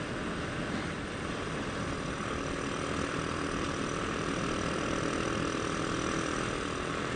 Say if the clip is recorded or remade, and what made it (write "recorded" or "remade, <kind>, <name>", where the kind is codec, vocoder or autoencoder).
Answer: recorded